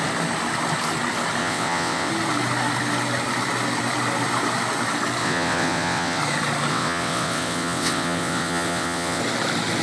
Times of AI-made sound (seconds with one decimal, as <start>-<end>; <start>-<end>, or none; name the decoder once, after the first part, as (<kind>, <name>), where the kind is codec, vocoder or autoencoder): 1.4-2.1 (vocoder, WaveNeXt); 5.2-6.2; 6.7-9.2